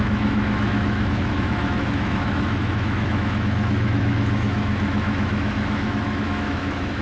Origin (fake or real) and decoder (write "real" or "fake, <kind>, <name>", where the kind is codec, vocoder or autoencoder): fake, autoencoder, DAC-VAE